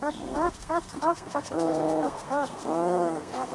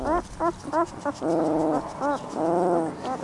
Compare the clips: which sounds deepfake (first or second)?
first